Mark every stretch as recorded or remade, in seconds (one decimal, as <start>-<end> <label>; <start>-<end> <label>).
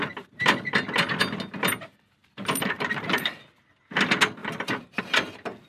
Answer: 0.0-2.2 recorded; 2.2-3.3 remade; 3.3-4.4 recorded; 4.4-5.0 remade; 5.0-5.7 recorded